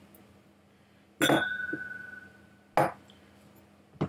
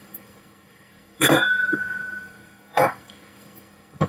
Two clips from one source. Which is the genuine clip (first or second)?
first